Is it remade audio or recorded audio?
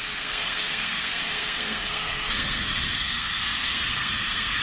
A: remade